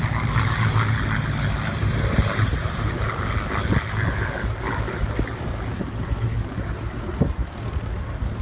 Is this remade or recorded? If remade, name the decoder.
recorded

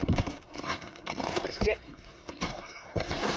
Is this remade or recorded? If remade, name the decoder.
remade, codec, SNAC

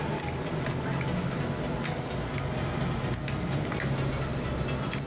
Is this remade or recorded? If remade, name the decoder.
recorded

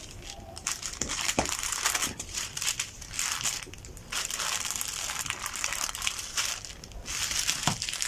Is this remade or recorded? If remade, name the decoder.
remade, vocoder, BigVGAN v2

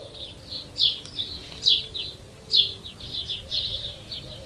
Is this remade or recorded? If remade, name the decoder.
recorded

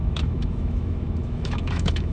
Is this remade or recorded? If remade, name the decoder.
remade, autoencoder, DAC-VAE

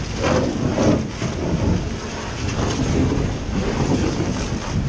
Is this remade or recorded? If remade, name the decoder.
recorded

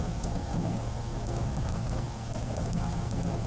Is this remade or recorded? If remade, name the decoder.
remade, codec, SNAC